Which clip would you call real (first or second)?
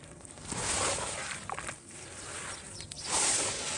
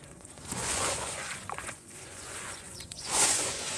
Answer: first